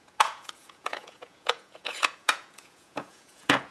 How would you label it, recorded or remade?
remade